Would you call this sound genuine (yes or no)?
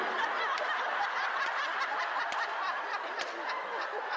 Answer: yes